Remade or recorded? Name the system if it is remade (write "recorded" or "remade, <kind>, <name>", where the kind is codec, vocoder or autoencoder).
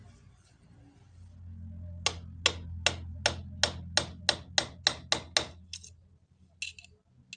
recorded